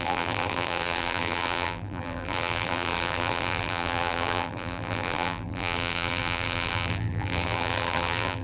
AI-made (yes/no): yes